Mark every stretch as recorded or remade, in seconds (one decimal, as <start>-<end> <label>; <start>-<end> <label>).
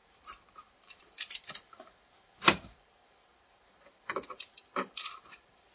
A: 0.0-5.7 remade